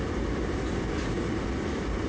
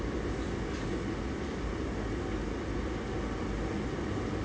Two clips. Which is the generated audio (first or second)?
first